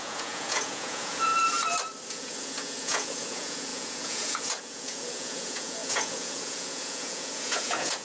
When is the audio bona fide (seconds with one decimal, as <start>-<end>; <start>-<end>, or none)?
1.3-2.1